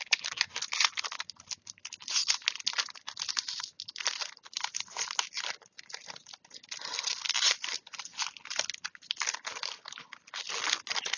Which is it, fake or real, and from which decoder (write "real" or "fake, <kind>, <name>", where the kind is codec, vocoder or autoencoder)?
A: real